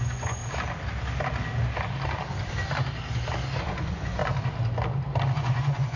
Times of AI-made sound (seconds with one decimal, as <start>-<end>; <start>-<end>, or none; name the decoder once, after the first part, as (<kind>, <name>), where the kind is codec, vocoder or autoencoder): 0.0-0.4 (vocoder, Vocos); 3.6-4.2; 5.3-6.0